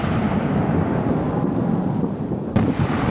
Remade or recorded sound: recorded